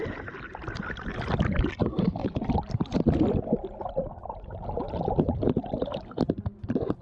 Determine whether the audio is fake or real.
real